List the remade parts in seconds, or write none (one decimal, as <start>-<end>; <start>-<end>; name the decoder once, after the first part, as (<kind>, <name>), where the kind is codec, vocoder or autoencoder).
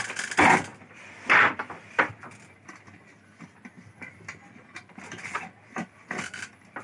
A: 0.7-2.0 (vocoder, BigVGAN v2)